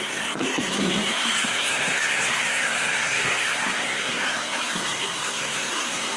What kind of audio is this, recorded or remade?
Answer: remade